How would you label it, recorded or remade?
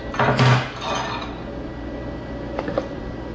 recorded